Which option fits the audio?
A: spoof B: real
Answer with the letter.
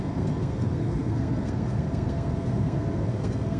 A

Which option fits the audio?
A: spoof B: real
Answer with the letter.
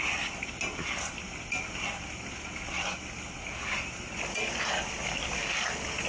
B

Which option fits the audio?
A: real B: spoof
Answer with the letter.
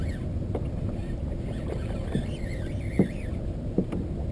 A